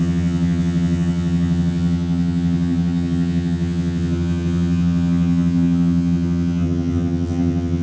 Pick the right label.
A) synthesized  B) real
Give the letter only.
A